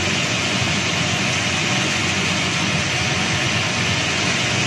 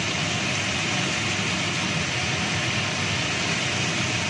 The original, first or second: second